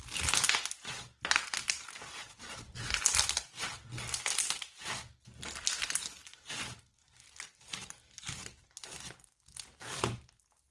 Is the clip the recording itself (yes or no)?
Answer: yes